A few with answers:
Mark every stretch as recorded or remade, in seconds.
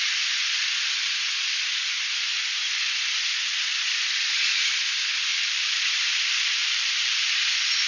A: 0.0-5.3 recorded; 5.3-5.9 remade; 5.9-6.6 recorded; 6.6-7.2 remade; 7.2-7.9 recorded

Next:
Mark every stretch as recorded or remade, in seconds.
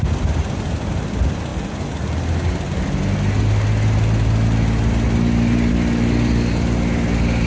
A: 0.0-7.5 recorded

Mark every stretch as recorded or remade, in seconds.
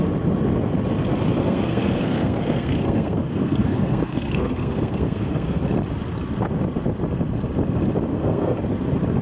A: 0.0-1.4 recorded; 1.4-5.6 remade; 5.6-8.1 recorded; 8.1-8.6 remade; 8.6-9.2 recorded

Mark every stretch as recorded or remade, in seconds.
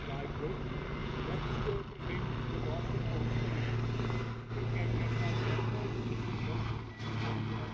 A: 0.0-1.0 recorded; 1.0-1.7 remade; 1.7-7.7 recorded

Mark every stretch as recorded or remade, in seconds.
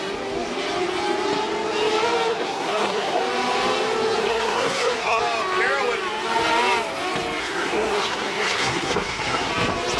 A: 0.0-2.3 recorded; 2.3-3.2 remade; 3.2-4.2 recorded; 4.2-5.2 remade; 5.2-7.4 recorded; 7.4-9.5 remade; 9.5-10.0 recorded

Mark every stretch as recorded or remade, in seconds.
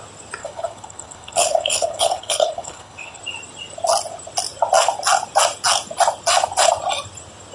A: 0.0-0.4 recorded; 0.4-3.2 remade; 3.2-7.5 recorded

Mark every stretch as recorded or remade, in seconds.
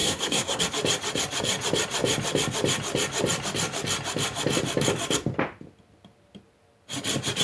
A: 0.0-0.6 remade; 0.6-7.4 recorded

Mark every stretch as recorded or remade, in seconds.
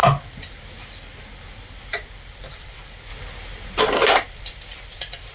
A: 0.0-2.5 recorded; 2.5-3.1 remade; 3.1-3.8 recorded; 3.8-5.3 remade